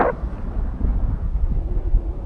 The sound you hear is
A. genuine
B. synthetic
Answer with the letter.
A